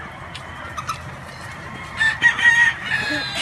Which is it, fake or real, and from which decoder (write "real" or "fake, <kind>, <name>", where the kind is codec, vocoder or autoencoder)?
real